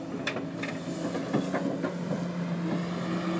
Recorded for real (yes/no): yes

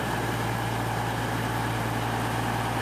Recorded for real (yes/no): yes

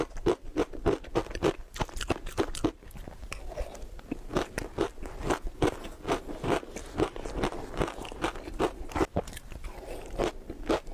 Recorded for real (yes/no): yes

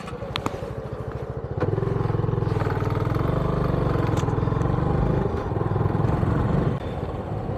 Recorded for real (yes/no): yes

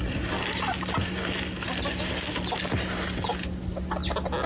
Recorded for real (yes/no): yes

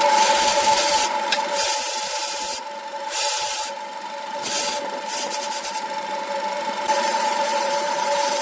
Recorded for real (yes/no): no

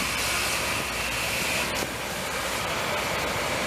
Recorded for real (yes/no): yes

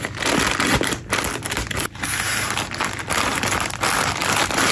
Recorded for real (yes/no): yes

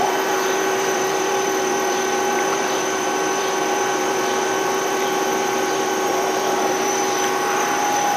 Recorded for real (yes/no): no